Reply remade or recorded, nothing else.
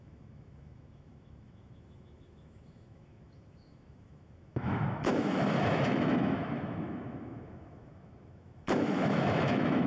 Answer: remade